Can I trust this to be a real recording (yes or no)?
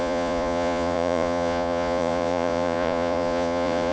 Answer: no